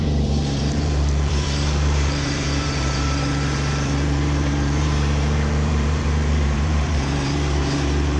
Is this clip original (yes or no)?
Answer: no